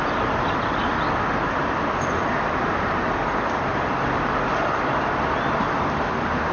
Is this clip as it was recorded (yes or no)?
yes